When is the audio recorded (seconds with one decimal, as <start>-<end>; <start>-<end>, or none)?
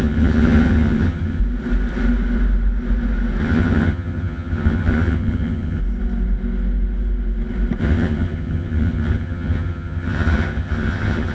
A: 1.4-3.4; 5.8-7.8